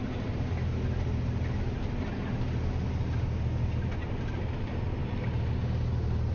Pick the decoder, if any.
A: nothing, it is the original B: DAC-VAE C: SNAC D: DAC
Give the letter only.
A